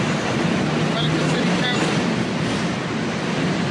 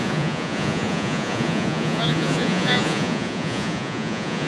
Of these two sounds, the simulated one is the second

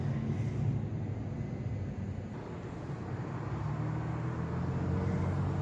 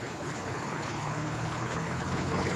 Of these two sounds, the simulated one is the second